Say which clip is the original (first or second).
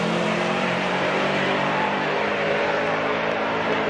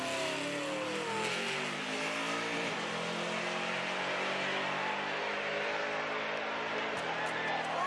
second